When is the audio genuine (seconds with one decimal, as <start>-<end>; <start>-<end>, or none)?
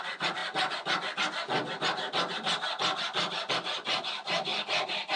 0.4-3.5